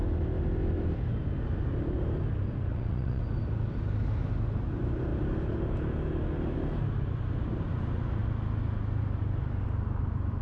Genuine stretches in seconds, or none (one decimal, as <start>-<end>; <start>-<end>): 0.0-2.7; 3.2-10.4